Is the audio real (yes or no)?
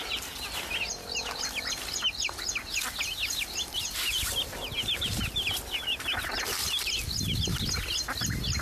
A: yes